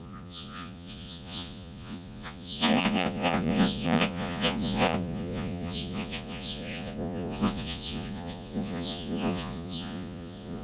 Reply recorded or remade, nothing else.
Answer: remade